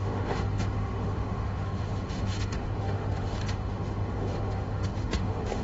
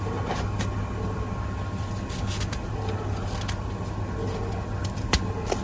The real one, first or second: second